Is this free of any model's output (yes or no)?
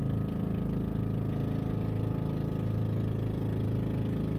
yes